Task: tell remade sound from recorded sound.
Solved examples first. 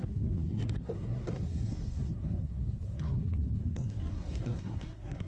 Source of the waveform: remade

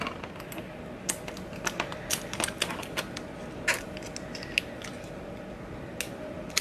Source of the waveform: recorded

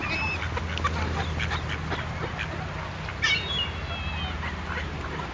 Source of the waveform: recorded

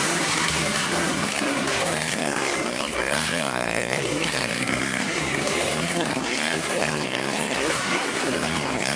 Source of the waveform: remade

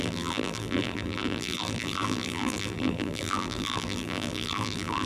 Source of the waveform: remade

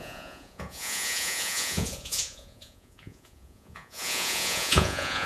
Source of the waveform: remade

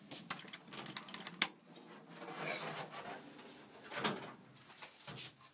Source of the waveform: recorded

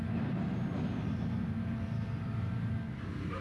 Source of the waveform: recorded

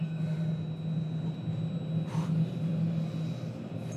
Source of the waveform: recorded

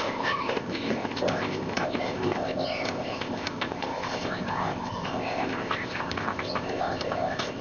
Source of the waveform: remade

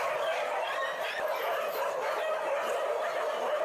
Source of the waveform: recorded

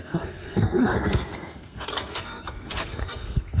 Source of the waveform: remade